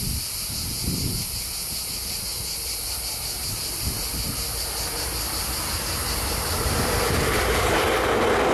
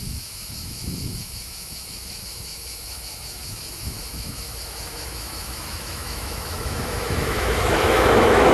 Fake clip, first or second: second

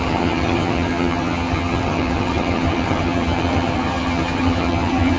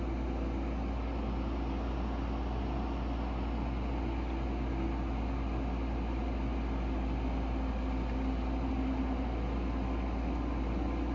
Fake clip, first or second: first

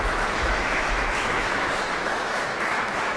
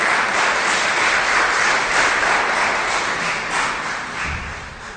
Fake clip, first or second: first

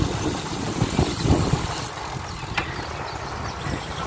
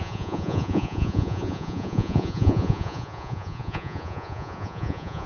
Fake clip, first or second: second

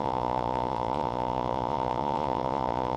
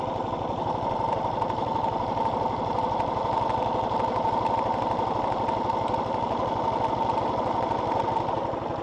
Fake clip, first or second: first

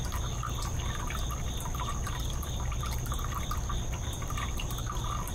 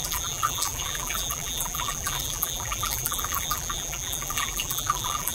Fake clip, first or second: second